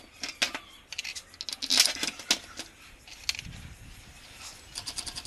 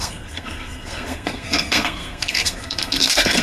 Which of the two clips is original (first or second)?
first